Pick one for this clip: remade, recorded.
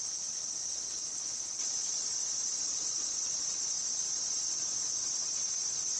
remade